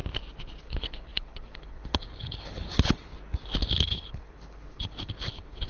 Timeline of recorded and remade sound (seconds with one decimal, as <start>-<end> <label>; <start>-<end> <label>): 0.0-0.6 recorded; 0.6-3.1 remade; 3.1-3.7 recorded; 3.7-5.7 remade